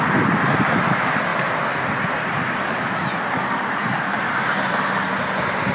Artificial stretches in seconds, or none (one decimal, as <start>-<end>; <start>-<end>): none